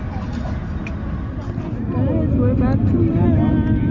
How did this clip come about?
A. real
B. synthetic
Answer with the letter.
A